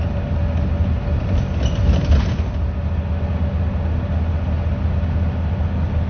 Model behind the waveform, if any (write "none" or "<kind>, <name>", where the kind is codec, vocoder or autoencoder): none